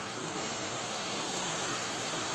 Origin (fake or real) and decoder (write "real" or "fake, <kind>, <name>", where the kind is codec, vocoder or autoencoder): fake, codec, SNAC